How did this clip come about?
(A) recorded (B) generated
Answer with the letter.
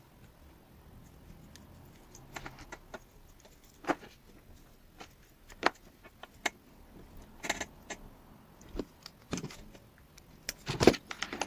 A